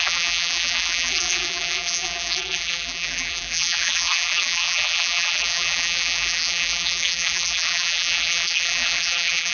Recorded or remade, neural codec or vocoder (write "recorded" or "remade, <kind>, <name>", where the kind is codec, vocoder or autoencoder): remade, vocoder, BigVGAN v2